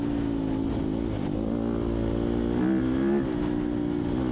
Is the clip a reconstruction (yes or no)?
no